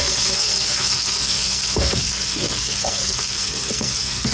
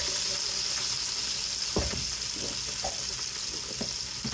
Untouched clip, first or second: second